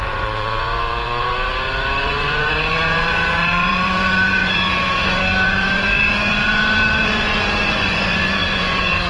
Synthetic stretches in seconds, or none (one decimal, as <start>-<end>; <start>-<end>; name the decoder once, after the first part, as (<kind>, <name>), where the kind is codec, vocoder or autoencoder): 0.0-9.1 (vocoder, Vocos)